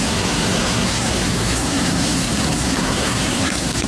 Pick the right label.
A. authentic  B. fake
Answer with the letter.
B